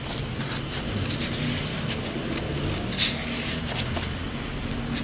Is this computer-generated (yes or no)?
no